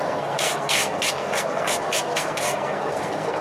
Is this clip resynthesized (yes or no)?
yes